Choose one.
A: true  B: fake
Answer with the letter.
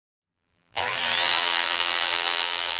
B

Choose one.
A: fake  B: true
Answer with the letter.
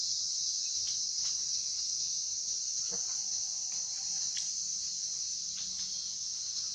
A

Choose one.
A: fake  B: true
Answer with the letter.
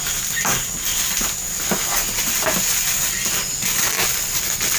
B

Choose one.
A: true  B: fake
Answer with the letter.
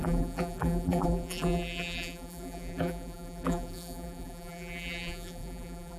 B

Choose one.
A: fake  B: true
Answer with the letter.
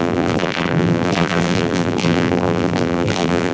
A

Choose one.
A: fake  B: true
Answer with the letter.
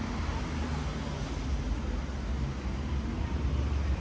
B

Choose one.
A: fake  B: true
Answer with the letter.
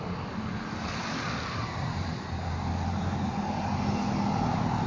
B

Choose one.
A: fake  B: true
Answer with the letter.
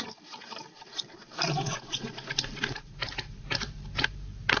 B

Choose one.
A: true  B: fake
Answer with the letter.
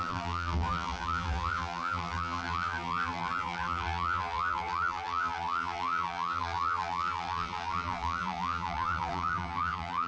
B